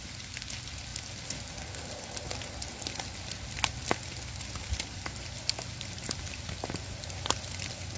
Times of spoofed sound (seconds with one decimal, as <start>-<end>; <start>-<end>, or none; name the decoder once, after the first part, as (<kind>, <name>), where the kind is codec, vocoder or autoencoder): none